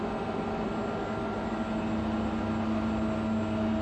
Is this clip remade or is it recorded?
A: recorded